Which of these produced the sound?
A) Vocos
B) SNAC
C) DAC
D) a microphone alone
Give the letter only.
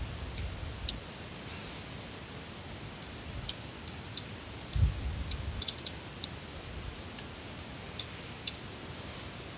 D